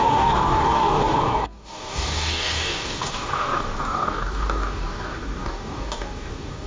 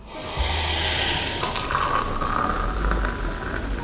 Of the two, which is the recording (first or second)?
second